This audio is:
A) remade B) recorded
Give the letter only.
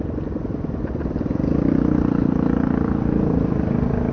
B